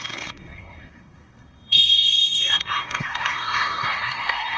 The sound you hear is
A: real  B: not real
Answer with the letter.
B